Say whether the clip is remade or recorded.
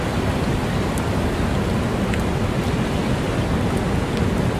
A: recorded